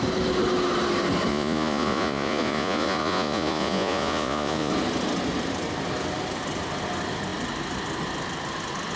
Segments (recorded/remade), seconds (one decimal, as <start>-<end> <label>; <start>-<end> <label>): 0.0-1.3 recorded; 1.3-4.7 remade; 4.7-9.0 recorded